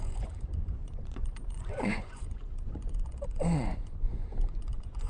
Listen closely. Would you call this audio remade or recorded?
remade